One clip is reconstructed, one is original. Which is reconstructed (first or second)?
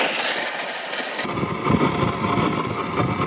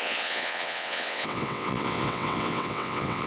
second